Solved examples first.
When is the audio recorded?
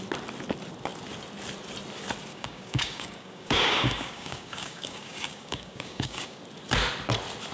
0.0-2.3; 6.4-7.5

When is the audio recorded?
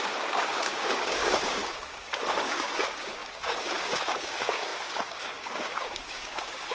none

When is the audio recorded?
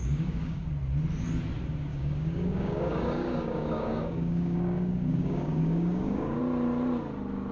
0.7-1.9; 6.4-7.5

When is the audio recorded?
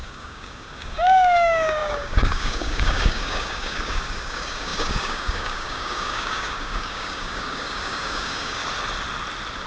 8.6-9.7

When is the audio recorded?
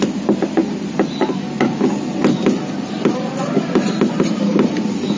0.0-5.2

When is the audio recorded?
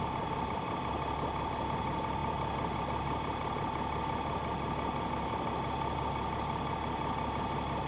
0.0-7.9